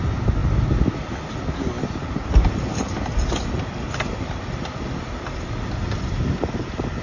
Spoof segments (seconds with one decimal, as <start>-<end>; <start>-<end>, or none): none